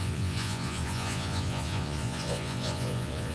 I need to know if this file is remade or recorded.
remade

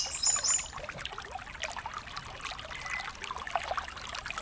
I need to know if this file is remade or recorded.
recorded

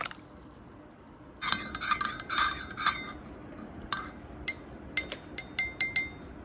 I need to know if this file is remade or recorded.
recorded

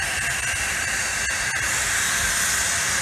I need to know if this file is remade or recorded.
recorded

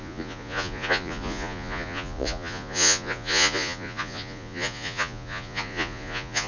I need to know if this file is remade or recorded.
remade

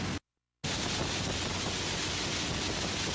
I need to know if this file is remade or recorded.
recorded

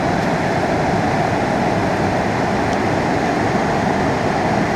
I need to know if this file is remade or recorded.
recorded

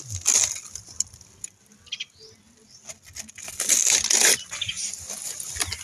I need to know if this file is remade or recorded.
recorded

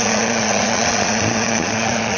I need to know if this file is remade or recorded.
remade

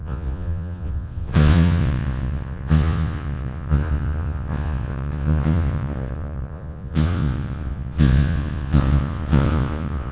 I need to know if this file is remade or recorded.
remade